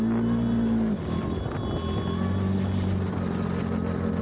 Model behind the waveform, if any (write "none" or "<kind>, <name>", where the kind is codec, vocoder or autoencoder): none